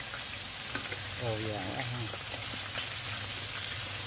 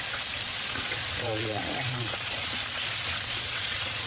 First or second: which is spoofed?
second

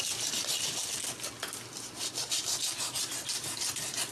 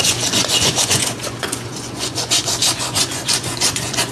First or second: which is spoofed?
second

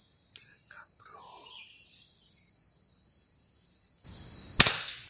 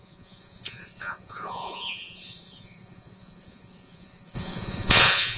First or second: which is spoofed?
second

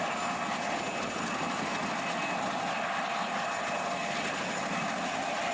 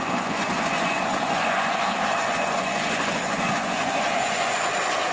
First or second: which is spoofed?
second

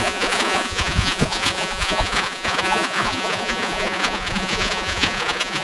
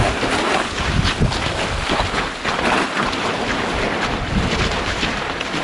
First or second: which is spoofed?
first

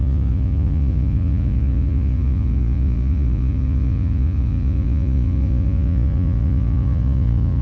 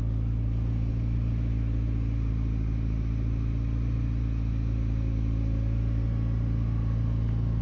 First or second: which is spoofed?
first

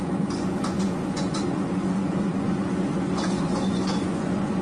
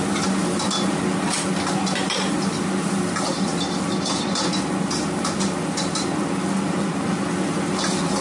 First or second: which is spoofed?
first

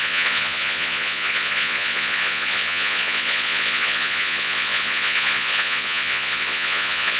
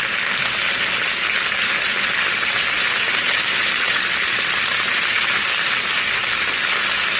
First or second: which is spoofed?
first